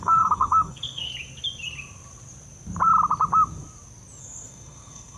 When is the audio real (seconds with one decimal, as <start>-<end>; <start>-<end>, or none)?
1.1-4.2